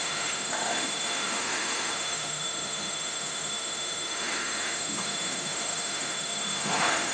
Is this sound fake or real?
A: fake